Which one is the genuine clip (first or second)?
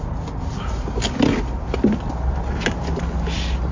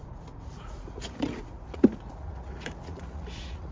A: first